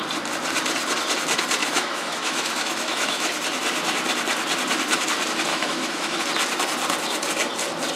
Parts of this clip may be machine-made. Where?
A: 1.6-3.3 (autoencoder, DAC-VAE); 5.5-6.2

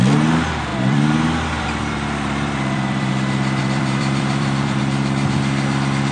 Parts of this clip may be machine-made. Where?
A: 0.7-3.1 (vocoder, BigVGAN v2); 3.6-4.8

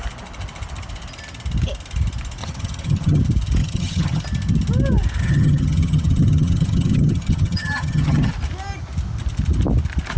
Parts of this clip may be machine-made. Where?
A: 2.4-3.2 (vocoder, HiFi-GAN); 3.6-4.2; 5.2-8.3